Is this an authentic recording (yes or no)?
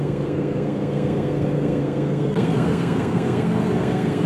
no